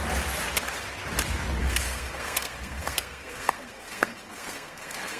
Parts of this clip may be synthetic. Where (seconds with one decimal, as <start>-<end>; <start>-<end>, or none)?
1.6-5.2